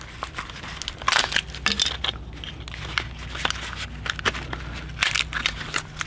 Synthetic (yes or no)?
no